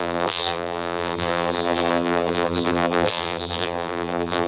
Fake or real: fake